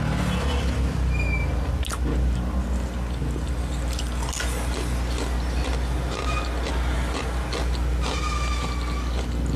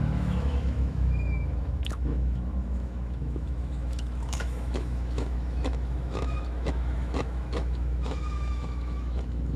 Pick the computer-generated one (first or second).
second